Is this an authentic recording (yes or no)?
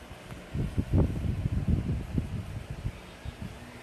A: yes